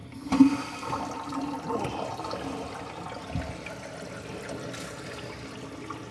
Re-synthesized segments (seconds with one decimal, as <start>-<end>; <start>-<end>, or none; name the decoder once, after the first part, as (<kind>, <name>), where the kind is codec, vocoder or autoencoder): none